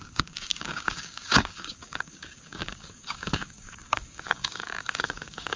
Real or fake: fake